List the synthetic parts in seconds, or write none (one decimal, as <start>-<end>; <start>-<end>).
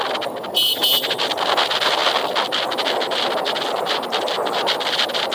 none